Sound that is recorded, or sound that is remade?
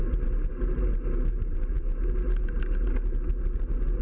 recorded